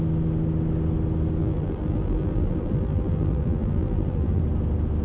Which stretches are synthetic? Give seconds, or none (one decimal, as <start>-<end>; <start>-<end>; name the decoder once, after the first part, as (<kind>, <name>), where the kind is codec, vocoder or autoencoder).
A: 1.4-4.4 (vocoder, BigVGAN v2)